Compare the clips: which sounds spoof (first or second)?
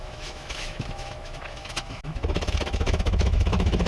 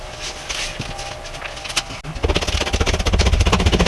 first